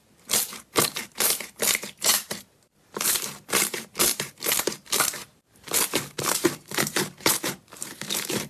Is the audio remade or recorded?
remade